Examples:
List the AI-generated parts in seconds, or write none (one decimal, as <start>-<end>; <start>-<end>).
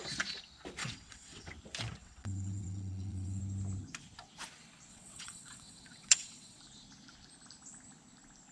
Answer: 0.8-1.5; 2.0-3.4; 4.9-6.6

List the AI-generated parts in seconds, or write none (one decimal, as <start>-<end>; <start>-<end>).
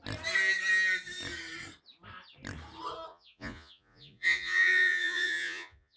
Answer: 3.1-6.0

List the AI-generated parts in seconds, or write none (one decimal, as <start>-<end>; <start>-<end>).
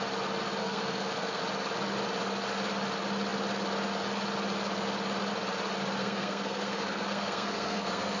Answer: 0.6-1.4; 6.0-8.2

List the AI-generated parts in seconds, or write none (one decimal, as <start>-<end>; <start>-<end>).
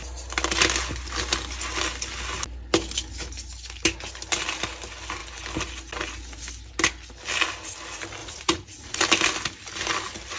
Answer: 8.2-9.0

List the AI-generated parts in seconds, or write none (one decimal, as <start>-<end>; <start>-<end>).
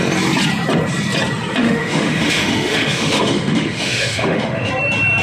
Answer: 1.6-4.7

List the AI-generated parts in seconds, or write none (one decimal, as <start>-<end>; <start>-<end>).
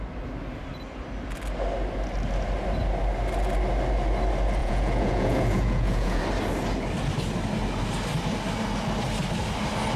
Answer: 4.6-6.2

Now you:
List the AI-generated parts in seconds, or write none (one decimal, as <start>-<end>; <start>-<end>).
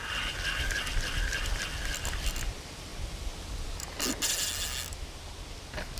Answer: none